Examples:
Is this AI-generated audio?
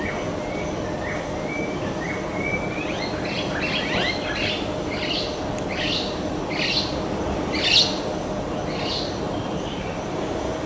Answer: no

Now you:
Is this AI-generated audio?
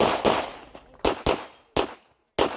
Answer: no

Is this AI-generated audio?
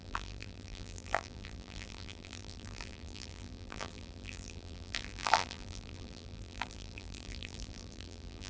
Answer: yes